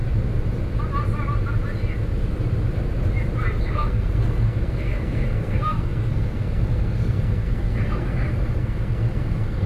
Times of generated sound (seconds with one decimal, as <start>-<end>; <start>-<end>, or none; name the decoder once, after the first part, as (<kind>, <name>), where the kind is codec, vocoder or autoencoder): 3.6-9.7 (codec, SNAC)